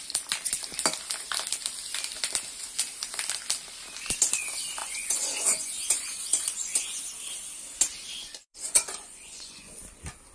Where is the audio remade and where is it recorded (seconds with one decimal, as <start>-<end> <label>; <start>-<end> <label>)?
0.0-4.8 recorded; 4.8-7.0 remade; 7.0-8.1 recorded; 8.1-9.8 remade; 9.8-10.3 recorded